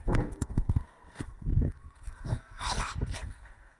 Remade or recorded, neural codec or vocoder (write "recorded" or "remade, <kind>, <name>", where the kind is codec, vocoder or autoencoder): remade, codec, SNAC